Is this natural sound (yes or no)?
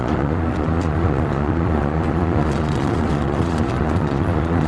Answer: no